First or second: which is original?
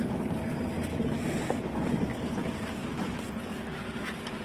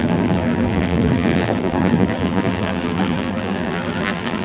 first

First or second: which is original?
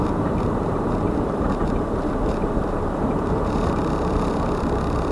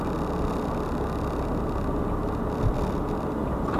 second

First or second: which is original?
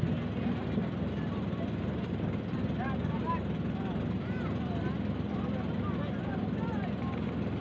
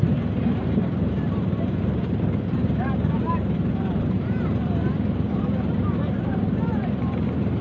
first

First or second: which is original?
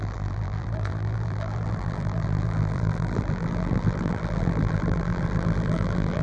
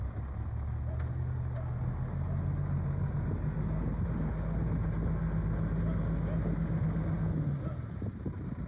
second